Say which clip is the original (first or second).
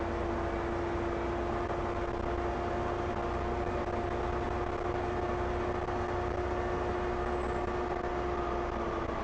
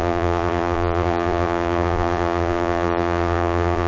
first